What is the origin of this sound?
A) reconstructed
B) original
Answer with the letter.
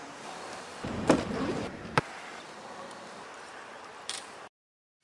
A